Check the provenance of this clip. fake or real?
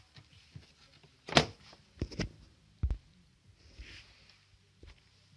real